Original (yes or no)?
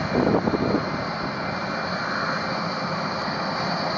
yes